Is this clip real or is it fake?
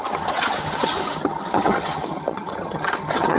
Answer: fake